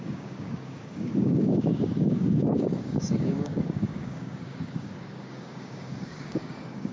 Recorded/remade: remade